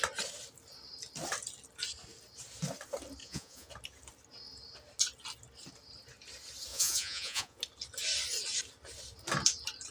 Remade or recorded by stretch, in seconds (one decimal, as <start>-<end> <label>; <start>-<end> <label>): 0.0-3.2 recorded; 3.2-3.7 remade; 3.7-6.7 recorded; 6.7-7.6 remade; 7.6-9.9 recorded